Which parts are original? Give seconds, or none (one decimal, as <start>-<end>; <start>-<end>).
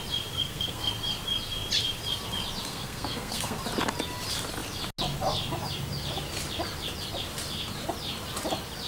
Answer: 0.0-0.4; 0.9-2.7; 3.6-8.9